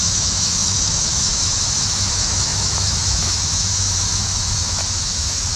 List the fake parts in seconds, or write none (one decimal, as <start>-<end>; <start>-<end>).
0.0-5.6